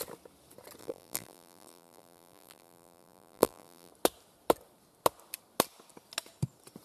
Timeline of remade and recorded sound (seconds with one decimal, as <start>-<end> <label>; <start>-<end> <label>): 0.0-0.8 recorded; 0.8-3.9 remade; 3.9-6.8 recorded